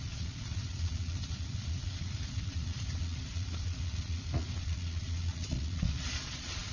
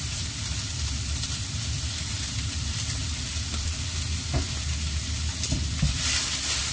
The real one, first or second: second